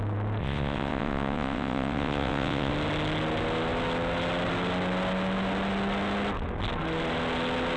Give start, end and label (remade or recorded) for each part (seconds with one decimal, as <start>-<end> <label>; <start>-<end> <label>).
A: 0.0-0.4 recorded; 0.4-2.7 remade; 2.7-7.8 recorded